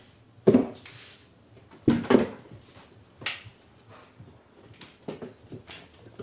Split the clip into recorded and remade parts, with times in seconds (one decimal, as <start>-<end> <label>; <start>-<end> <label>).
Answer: 0.0-6.2 recorded